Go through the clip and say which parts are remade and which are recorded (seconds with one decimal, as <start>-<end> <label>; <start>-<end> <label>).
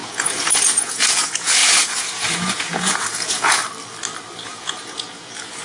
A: 0.0-3.6 remade; 3.6-4.4 recorded; 4.4-5.6 remade